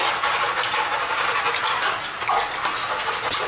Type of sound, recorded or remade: recorded